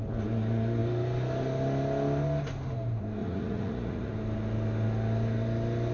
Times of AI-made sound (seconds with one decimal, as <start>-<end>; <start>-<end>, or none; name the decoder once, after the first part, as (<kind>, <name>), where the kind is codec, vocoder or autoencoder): 3.2-4.1 (vocoder, Vocos)